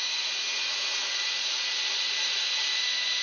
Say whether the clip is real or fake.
fake